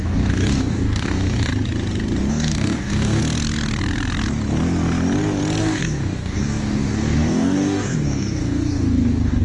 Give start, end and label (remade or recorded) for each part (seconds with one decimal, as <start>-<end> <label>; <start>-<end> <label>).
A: 0.0-1.5 remade; 1.5-2.3 recorded; 2.3-3.2 remade; 3.2-5.6 recorded; 5.6-9.4 remade